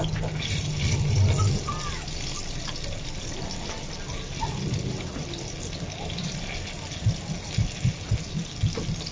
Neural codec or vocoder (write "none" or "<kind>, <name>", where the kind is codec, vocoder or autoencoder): none